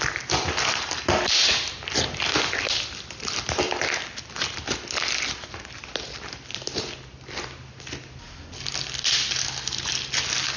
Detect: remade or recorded recorded